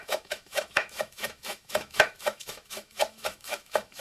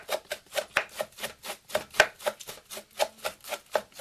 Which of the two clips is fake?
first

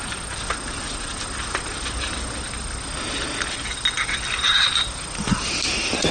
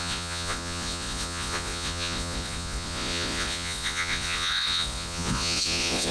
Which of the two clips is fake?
second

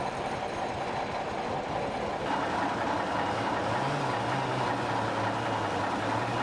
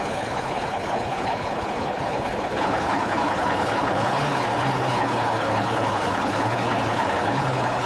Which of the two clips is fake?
second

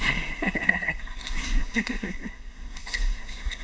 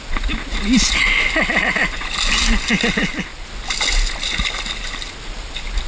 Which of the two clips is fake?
first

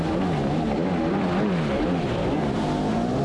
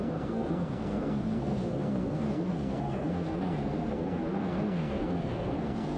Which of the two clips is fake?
second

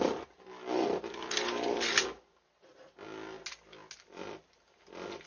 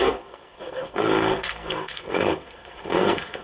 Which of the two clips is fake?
second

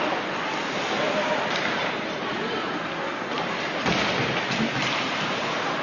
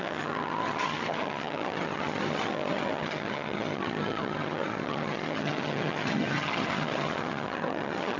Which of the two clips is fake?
second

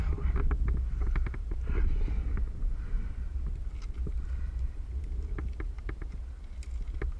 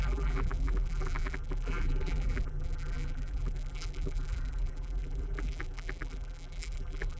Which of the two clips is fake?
second